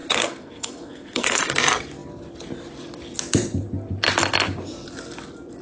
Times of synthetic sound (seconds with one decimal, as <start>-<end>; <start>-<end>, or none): 0.0-1.4